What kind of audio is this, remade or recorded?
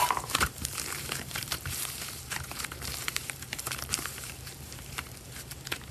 remade